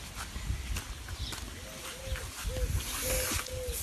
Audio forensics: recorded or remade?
recorded